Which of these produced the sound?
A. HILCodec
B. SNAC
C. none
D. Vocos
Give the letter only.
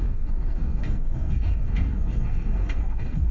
B